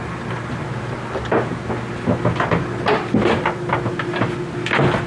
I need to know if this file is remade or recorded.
recorded